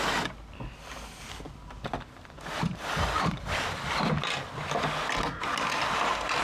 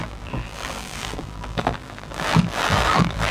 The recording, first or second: first